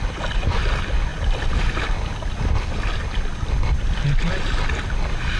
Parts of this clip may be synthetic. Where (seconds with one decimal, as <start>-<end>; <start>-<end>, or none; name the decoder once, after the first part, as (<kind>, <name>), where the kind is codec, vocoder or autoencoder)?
none